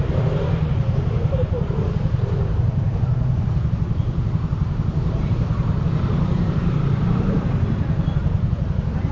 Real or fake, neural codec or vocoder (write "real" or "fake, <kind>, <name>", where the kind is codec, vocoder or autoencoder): fake, vocoder, BigVGAN v2